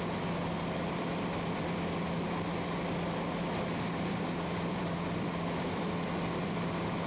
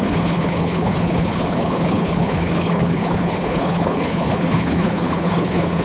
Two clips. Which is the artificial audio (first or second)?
second